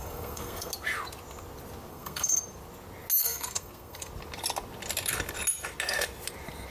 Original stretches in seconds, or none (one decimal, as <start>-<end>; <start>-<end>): 0.7-1.9; 2.4-3.2; 4.1-6.7